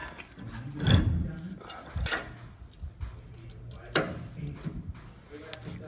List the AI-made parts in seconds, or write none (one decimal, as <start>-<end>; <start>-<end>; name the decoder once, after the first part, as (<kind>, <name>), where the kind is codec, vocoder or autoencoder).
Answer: none